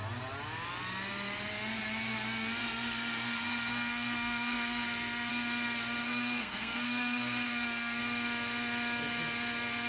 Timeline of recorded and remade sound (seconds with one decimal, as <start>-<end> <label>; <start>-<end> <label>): 0.0-2.6 recorded; 2.6-5.3 remade; 5.3-6.0 recorded; 6.0-8.0 remade; 8.0-9.9 recorded

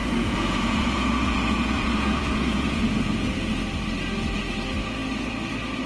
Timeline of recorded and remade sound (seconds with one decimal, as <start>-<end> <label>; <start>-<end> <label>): 0.0-3.5 remade; 3.5-5.9 recorded

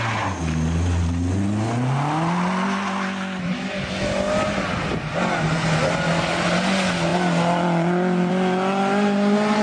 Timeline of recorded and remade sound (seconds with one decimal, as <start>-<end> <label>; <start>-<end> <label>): 0.0-9.6 recorded

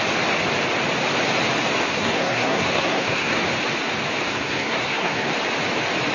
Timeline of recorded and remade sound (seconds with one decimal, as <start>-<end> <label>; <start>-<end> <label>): 0.0-1.9 recorded; 1.9-3.4 remade; 3.4-4.3 recorded; 4.3-5.3 remade; 5.3-6.1 recorded

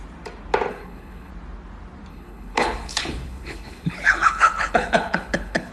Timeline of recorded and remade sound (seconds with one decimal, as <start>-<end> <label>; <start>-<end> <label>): 0.0-0.7 recorded; 0.7-1.3 remade; 1.3-2.1 recorded; 2.1-5.7 remade

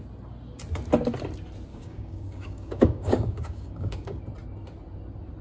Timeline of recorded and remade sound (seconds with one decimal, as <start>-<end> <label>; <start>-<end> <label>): 0.0-1.7 recorded; 1.7-4.2 remade; 4.2-5.4 recorded

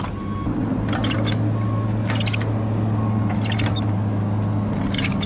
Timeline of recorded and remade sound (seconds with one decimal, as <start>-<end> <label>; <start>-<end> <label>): 0.0-5.3 recorded

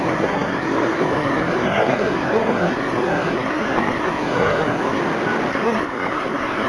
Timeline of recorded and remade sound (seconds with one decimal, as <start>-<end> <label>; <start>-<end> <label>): 0.0-5.0 remade; 5.0-5.5 recorded; 5.5-6.7 remade